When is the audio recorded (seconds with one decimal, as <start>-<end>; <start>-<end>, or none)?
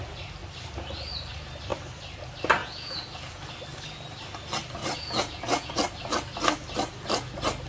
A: 0.0-2.6; 3.5-4.8; 5.7-7.7